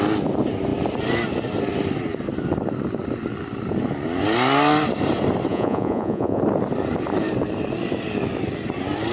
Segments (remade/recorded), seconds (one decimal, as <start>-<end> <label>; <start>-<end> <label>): 0.0-5.5 recorded; 5.5-6.4 remade; 6.4-9.1 recorded